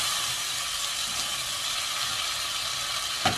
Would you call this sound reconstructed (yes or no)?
no